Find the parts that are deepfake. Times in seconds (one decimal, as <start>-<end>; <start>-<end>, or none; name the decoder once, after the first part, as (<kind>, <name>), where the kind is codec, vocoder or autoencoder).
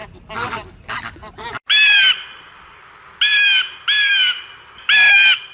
none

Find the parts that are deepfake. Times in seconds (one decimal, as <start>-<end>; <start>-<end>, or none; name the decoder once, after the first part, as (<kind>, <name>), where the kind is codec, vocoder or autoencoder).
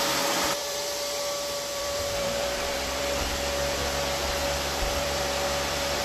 0.6-3.0 (vocoder, BigVGAN v2); 4.4-6.0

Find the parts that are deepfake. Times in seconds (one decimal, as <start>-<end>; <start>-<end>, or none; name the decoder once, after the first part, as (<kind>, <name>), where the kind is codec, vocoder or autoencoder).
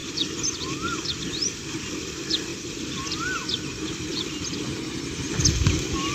2.5-3.0 (vocoder, BigVGAN v2)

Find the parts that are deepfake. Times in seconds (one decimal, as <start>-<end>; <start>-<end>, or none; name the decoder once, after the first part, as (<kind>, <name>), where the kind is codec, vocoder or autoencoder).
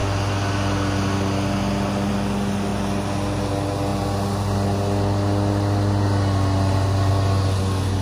none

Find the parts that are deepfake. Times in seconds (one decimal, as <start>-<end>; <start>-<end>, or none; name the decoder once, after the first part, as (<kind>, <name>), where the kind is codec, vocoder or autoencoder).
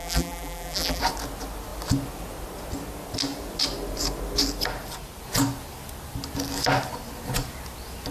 0.0-1.0 (vocoder, BigVGAN v2)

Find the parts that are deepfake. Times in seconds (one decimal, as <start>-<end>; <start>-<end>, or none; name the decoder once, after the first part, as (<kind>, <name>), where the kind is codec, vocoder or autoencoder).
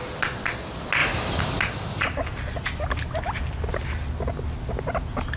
none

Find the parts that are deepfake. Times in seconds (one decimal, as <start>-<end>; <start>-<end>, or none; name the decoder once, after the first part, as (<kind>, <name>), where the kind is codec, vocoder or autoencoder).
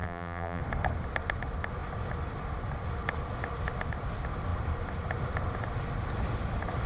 0.0-0.6 (vocoder, BigVGAN v2)